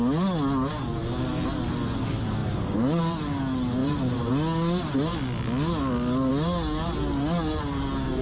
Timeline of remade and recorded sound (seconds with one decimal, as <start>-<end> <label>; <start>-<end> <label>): 0.0-2.4 recorded; 2.4-3.0 remade; 3.0-3.8 recorded; 3.8-4.3 remade; 4.3-8.2 recorded